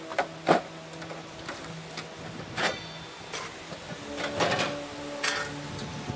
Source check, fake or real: real